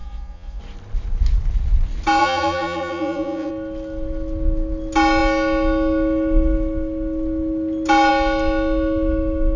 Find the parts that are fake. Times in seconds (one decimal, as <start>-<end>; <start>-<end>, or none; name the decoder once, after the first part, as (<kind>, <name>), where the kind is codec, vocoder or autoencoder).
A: 0.0-0.6 (vocoder, Vocos); 2.2-3.5